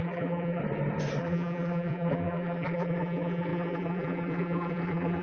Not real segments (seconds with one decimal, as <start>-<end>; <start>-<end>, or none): 0.0-0.6; 1.2-5.2

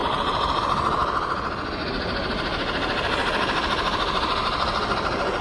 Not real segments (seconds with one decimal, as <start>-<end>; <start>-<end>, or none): 0.0-0.6; 4.4-5.4

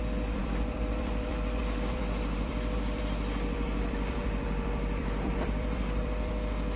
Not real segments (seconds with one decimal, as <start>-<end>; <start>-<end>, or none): 0.0-6.8

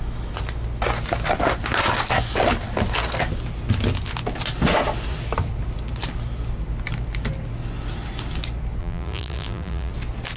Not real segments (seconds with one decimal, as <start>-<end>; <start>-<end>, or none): 8.8-9.9

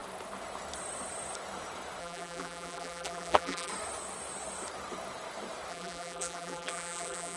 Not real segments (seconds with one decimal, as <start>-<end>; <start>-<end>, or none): 2.0-3.7; 5.7-7.4

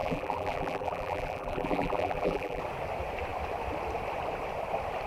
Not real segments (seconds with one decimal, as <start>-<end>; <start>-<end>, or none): 0.0-2.6

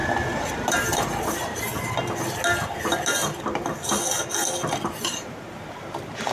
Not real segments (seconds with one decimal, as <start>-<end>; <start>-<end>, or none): 0.7-1.7; 4.8-6.3